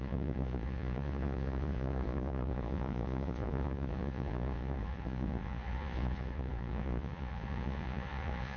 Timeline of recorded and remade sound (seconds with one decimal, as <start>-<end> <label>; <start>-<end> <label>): 0.0-8.6 remade